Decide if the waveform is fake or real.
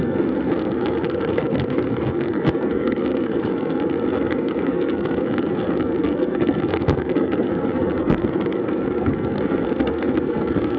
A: fake